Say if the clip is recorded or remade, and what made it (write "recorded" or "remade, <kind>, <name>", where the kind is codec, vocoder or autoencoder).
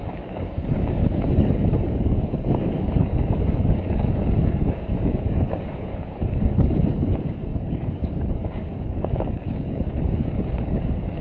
remade, codec, DAC